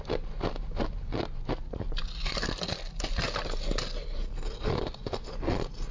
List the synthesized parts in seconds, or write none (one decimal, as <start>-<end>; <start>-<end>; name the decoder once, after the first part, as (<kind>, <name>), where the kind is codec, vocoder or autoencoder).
none